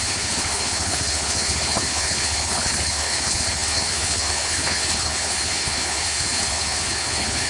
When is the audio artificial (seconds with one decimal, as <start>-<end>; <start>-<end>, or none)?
0.0-7.5